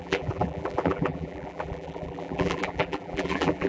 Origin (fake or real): fake